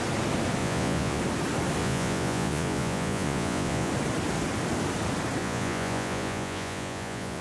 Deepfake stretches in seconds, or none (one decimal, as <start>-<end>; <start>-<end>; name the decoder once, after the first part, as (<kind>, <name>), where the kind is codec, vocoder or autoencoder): 0.6-1.2 (vocoder, Vocos); 1.8-3.9; 5.4-7.4